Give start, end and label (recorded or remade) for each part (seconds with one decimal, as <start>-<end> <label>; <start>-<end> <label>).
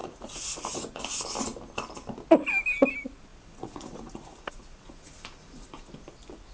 0.0-1.0 remade; 1.0-3.3 recorded; 3.3-5.9 remade; 5.9-6.5 recorded